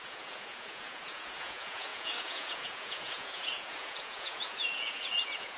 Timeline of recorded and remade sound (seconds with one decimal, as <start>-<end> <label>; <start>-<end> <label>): 0.0-5.6 remade